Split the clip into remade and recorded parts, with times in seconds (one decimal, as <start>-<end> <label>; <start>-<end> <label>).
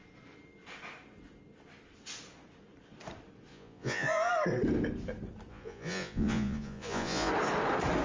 0.0-3.5 recorded; 3.5-4.3 remade; 4.3-5.5 recorded; 5.5-7.3 remade; 7.3-8.0 recorded